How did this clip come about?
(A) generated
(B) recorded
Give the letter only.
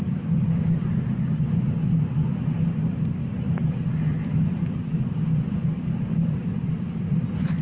B